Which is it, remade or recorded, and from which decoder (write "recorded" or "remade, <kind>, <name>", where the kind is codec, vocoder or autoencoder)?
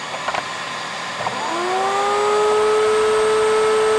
recorded